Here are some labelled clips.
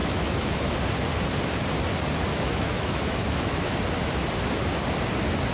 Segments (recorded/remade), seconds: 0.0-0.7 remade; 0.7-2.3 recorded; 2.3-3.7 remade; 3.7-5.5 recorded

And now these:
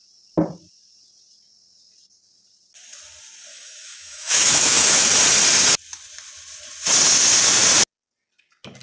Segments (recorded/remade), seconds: 0.0-3.5 recorded; 3.5-5.1 remade; 5.1-8.8 recorded